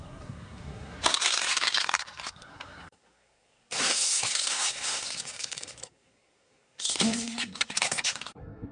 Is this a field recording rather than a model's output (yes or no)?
no